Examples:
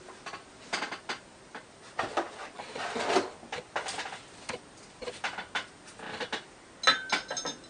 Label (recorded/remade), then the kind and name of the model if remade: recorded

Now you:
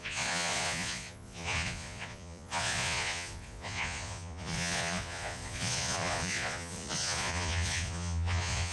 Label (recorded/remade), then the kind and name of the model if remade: remade, vocoder, Vocos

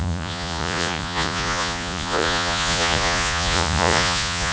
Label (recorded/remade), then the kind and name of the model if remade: remade, vocoder, Vocos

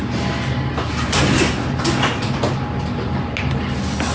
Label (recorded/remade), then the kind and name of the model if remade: recorded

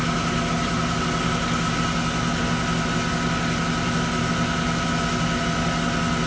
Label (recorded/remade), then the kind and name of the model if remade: recorded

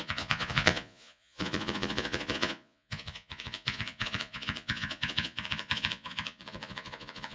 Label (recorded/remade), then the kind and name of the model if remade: remade, vocoder, Vocos